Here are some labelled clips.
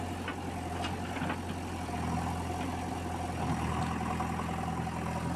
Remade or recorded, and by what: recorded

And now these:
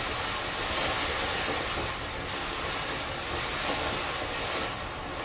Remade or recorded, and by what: recorded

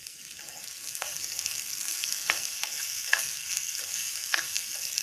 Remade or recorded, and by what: remade, codec, SNAC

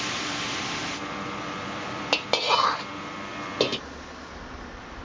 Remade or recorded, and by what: recorded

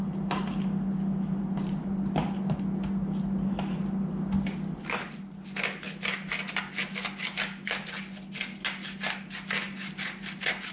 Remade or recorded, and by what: recorded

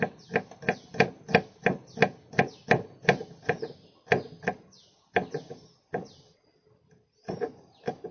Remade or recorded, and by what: recorded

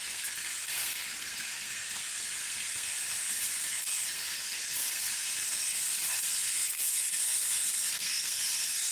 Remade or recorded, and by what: remade, codec, SNAC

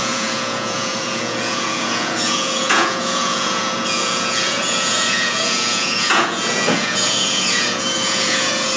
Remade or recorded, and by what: remade, vocoder, Vocos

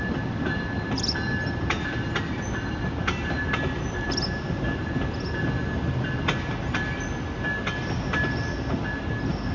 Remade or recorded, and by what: recorded